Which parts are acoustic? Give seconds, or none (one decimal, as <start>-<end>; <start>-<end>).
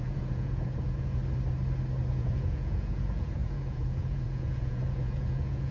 1.2-2.1